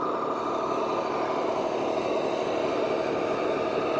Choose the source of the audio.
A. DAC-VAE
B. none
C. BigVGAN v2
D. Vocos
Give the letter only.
B